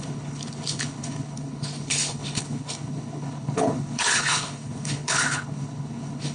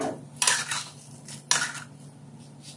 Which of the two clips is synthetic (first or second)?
first